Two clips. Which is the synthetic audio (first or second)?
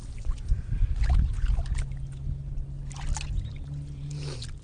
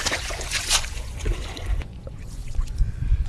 second